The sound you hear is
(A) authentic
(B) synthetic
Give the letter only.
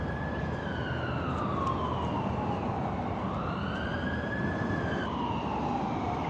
A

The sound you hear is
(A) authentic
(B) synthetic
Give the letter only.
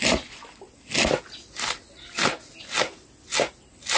A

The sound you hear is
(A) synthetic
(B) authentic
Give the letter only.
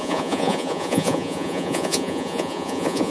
A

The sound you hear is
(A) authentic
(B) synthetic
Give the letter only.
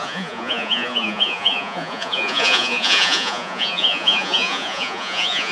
B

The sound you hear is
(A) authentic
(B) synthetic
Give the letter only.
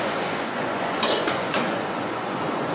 B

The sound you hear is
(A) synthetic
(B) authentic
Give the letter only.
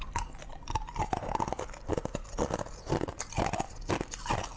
B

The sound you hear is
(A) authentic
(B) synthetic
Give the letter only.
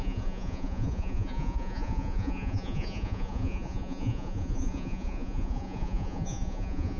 B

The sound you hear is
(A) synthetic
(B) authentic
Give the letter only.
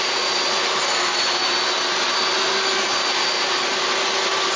B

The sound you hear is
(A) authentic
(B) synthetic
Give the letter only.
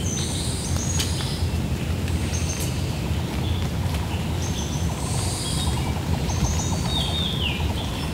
A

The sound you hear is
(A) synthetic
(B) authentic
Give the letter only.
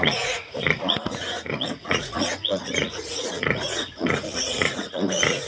A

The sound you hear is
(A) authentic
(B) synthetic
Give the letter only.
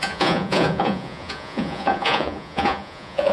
B